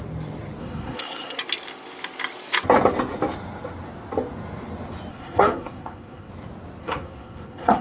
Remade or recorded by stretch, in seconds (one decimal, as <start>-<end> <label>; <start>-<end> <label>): 0.0-0.6 recorded; 0.6-1.4 remade; 1.4-5.1 recorded; 5.1-6.3 remade; 6.3-6.8 recorded; 6.8-7.8 remade

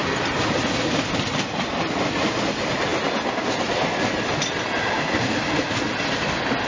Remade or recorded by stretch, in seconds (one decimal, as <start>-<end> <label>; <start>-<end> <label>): 0.0-6.7 recorded

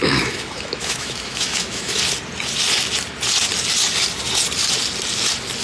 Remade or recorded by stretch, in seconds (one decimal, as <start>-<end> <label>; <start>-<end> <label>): 0.0-2.0 remade; 2.0-5.6 recorded

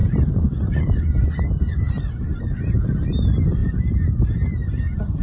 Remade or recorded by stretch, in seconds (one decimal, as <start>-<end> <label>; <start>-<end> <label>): 0.0-2.7 remade; 2.7-5.2 recorded